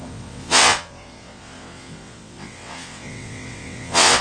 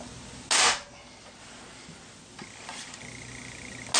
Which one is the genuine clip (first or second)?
second